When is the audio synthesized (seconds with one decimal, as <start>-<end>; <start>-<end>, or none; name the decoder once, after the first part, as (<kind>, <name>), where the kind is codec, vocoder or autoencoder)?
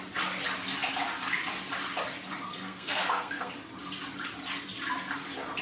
2.5-3.5 (codec, SNAC)